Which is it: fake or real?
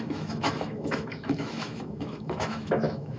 fake